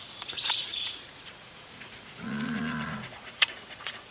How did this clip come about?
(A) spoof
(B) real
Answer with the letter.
A